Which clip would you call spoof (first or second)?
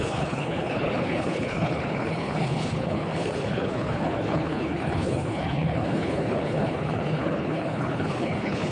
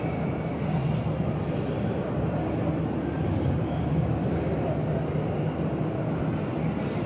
first